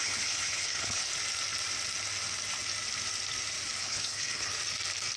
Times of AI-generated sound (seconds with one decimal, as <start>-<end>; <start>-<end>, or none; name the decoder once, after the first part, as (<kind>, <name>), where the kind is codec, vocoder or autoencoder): 0.0-1.1 (codec, HILCodec); 3.8-4.5